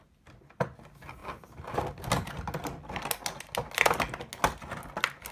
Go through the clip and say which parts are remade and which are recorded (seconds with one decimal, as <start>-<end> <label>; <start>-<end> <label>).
0.0-5.3 recorded